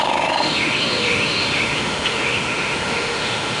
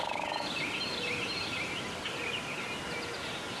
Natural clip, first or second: second